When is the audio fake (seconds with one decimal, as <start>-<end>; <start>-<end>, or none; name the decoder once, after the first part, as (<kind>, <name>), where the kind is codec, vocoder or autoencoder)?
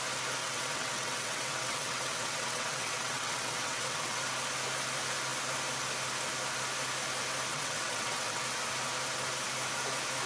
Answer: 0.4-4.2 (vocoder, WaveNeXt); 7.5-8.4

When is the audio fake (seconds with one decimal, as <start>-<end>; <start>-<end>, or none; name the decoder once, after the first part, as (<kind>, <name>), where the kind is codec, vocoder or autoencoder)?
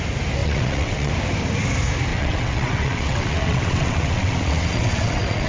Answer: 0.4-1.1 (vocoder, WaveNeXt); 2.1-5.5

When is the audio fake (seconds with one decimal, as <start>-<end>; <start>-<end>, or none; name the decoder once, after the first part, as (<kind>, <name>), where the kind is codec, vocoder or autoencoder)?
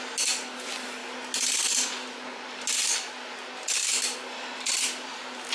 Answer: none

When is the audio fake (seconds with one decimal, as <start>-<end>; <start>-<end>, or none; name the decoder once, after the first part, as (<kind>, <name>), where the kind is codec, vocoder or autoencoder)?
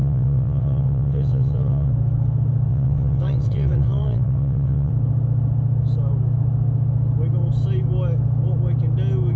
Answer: 0.0-1.9 (vocoder, WaveNeXt); 2.7-4.9